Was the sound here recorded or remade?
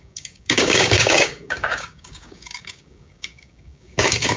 remade